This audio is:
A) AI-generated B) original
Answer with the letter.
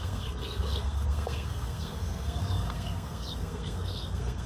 A